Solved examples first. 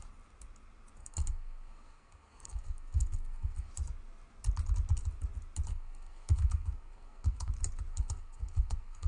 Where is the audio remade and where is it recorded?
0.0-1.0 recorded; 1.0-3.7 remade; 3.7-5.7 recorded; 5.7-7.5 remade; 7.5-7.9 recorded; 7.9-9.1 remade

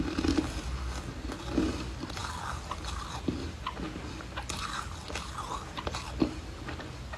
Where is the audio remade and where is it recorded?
0.0-7.2 recorded

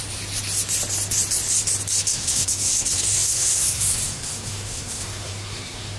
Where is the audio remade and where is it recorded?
0.0-2.1 recorded; 2.1-6.0 remade